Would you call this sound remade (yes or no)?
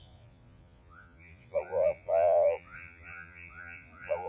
yes